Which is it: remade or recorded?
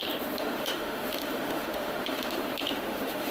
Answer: remade